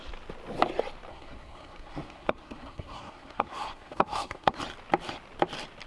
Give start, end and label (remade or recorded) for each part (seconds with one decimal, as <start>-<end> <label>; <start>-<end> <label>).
0.0-1.1 recorded; 1.1-4.6 remade; 4.6-5.9 recorded